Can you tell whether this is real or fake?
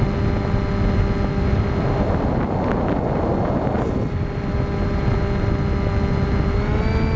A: real